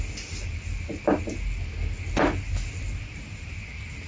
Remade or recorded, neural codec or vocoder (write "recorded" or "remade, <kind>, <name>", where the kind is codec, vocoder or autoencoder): recorded